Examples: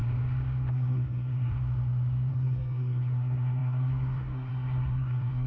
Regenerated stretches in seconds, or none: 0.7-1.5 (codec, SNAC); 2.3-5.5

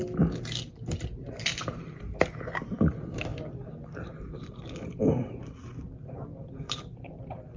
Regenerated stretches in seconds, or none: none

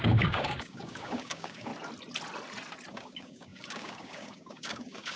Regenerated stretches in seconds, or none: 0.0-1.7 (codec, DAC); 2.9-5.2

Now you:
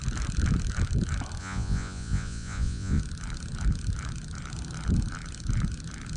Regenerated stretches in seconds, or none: 1.4-3.0 (vocoder, Vocos)

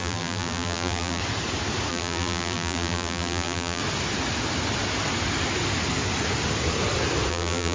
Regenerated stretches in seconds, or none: 0.0-1.2 (vocoder, BigVGAN v2); 1.9-3.8; 7.3-7.7

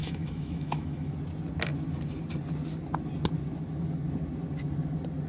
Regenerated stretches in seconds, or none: 0.0-1.1 (autoencoder, DAC-VAE)